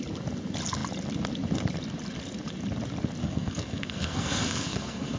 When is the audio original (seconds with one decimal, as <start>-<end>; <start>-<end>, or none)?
0.0-3.2